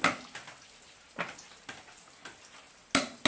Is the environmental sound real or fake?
real